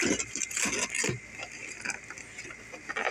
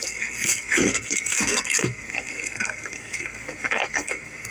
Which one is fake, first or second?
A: second